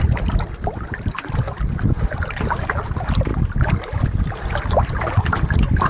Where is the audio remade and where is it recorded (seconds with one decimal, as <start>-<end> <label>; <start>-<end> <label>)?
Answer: 0.0-5.9 recorded